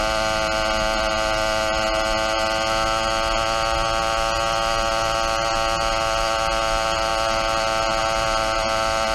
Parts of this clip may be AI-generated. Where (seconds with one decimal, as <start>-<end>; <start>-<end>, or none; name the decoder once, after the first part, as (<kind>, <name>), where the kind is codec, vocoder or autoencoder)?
none